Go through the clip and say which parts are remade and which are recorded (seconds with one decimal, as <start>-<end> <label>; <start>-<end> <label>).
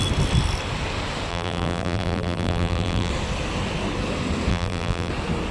0.0-1.3 recorded; 1.3-3.1 remade; 3.1-4.5 recorded; 4.5-5.1 remade; 5.1-5.5 recorded